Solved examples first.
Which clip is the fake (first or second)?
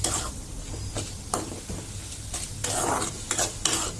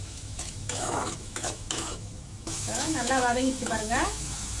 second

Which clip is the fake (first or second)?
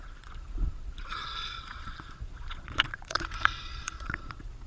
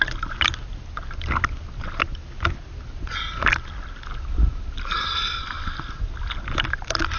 first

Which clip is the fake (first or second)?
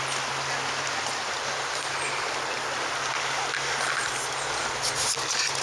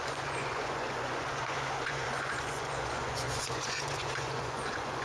second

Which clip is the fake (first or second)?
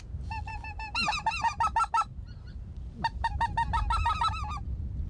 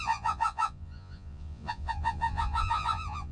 second